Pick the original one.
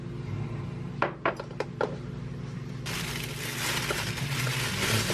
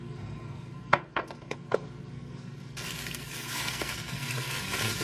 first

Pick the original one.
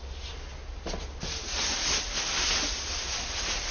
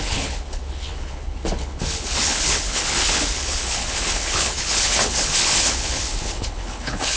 first